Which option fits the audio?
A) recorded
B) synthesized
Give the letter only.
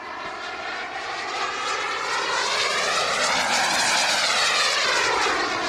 A